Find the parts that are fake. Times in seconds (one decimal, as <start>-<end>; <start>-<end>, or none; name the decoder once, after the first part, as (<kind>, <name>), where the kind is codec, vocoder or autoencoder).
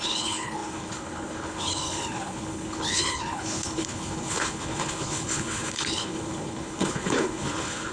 0.0-7.9 (codec, HILCodec)